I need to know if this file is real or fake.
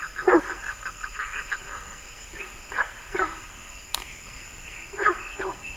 fake